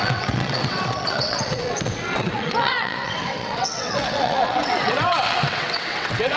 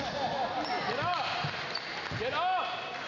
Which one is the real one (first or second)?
second